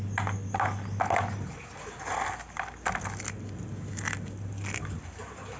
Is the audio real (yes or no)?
yes